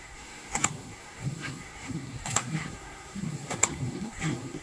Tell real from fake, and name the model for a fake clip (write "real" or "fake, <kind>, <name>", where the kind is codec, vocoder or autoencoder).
fake, codec, SNAC